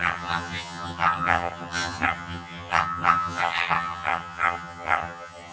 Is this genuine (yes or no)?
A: no